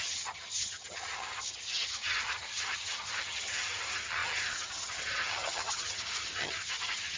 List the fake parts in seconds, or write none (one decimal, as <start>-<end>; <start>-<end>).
0.0-7.2